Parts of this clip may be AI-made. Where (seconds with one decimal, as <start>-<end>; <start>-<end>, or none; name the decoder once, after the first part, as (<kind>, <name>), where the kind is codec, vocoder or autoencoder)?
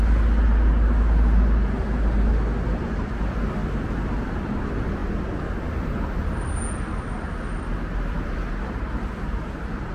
3.6-4.1 (vocoder, BigVGAN v2)